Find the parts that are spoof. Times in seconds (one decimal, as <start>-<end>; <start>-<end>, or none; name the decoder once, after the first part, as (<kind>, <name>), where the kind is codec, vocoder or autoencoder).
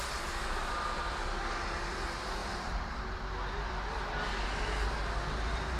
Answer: 2.4-3.0 (vocoder, BigVGAN v2)